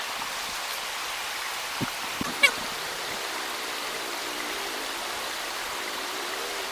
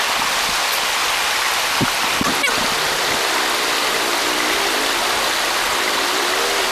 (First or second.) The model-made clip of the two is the first